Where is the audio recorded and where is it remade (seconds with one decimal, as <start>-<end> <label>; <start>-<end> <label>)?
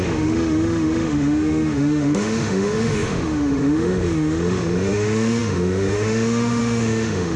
0.0-7.4 remade